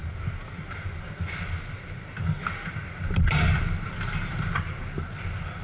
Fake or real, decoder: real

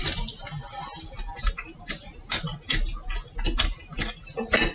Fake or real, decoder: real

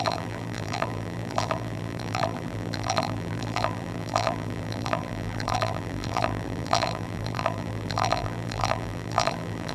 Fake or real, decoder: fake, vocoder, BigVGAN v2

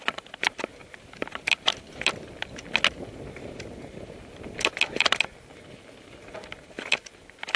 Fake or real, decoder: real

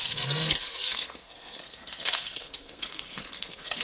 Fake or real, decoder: fake, codec, SNAC